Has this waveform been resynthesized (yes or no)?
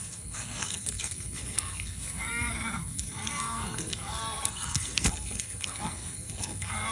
yes